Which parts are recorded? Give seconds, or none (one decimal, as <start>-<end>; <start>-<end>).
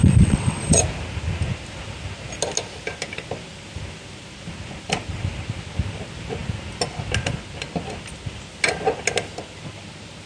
0.8-10.3